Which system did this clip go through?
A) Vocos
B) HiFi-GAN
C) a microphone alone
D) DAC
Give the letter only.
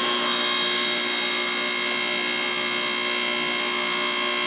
C